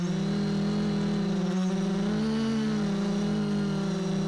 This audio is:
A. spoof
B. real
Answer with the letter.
B